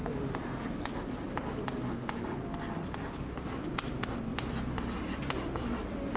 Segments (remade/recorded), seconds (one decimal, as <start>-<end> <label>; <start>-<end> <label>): 0.0-6.2 recorded